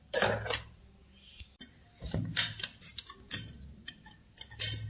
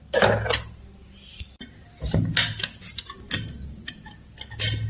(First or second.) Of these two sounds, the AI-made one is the first